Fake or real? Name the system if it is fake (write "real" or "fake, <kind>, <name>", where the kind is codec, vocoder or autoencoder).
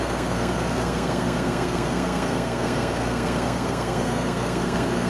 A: fake, codec, SNAC